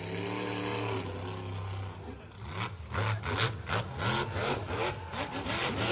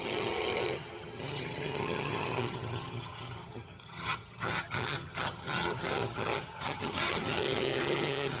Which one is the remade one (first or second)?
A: second